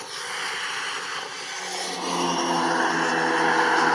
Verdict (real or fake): real